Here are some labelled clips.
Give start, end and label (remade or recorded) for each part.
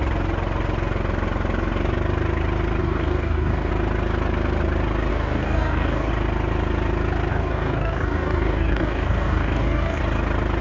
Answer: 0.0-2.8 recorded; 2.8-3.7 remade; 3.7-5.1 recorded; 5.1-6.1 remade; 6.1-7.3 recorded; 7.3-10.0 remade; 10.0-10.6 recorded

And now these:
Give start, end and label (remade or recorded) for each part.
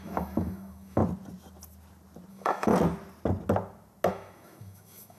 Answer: 0.0-1.0 remade; 1.0-2.3 recorded; 2.3-2.7 remade; 2.7-4.1 recorded; 4.1-5.2 remade